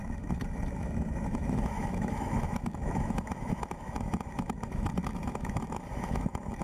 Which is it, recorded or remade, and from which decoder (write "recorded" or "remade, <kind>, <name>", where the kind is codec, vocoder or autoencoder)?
remade, autoencoder, DAC-VAE